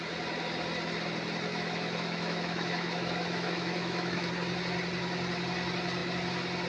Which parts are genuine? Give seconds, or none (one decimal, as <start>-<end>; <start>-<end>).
0.0-1.5; 4.3-6.7